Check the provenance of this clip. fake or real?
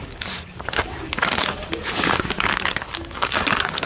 fake